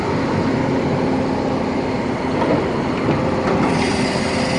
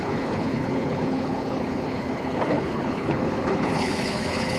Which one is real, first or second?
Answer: first